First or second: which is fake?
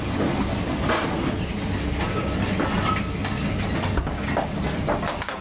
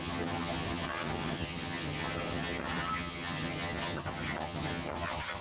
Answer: second